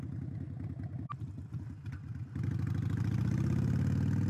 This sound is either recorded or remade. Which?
recorded